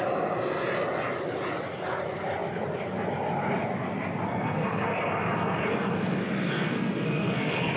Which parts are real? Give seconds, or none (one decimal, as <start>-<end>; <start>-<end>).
0.0-4.3